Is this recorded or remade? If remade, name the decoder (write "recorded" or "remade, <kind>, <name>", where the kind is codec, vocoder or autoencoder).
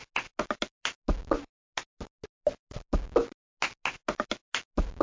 recorded